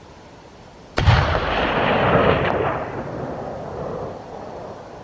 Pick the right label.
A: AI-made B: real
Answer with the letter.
A